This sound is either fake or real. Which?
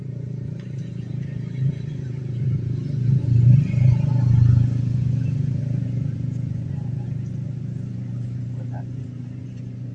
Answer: fake